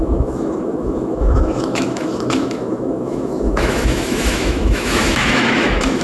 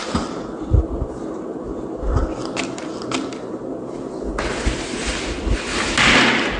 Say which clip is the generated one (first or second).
first